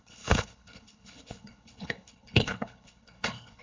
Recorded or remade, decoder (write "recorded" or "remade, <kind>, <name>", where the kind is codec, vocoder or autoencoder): remade, codec, HILCodec